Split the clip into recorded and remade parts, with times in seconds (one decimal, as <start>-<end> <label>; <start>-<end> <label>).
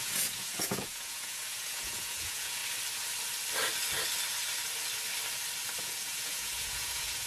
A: 0.0-2.6 remade; 2.6-5.8 recorded; 5.8-7.3 remade